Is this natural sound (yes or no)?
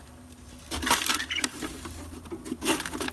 yes